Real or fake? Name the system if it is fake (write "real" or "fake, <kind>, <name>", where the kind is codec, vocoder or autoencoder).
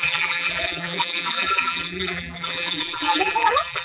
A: fake, vocoder, BigVGAN v2